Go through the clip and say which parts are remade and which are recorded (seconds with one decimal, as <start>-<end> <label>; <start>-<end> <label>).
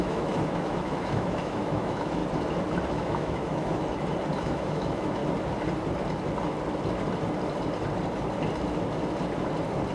0.0-2.2 remade; 2.2-2.9 recorded; 2.9-3.8 remade; 3.8-4.4 recorded; 4.4-5.2 remade; 5.2-9.9 recorded